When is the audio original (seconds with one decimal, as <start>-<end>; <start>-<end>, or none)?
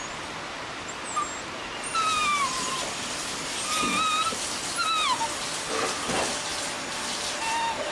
0.0-7.9